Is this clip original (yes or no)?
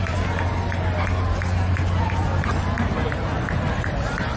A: yes